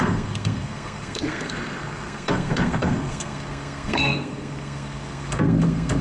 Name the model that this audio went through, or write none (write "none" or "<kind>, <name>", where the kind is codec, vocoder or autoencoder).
codec, SNAC